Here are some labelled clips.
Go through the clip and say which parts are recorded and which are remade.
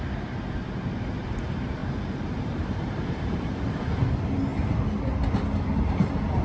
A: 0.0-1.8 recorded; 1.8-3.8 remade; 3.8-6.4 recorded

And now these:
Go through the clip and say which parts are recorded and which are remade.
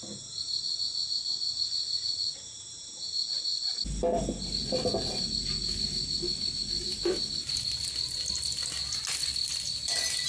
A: 0.0-10.3 recorded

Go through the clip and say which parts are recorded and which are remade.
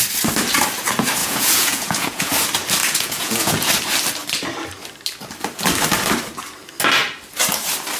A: 0.0-1.2 recorded; 1.2-2.3 remade; 2.3-2.8 recorded; 2.8-3.7 remade; 3.7-8.0 recorded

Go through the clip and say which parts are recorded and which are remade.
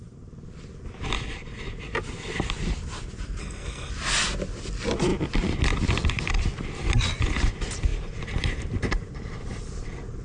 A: 0.0-3.4 recorded; 3.4-3.9 remade; 3.9-10.2 recorded